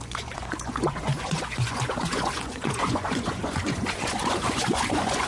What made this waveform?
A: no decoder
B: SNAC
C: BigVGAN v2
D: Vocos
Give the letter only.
D